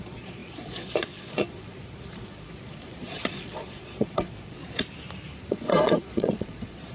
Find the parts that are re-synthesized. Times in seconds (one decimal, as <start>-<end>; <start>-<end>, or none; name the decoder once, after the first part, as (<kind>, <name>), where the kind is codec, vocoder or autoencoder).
0.0-4.6 (vocoder, Vocos); 5.5-6.9